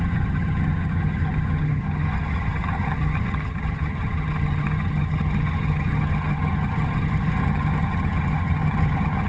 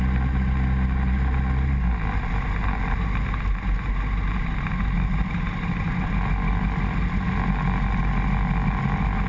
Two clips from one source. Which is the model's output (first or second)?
first